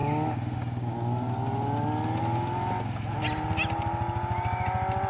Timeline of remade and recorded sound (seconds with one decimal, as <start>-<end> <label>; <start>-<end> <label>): 0.0-5.1 recorded